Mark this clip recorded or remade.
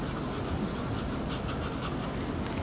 recorded